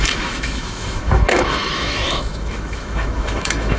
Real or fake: fake